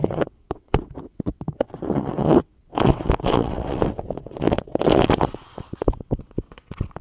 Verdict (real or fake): fake